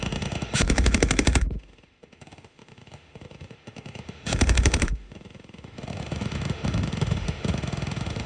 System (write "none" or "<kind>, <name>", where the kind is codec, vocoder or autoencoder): autoencoder, DAC-VAE